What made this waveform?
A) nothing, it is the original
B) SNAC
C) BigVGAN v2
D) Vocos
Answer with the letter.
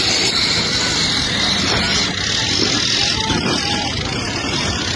A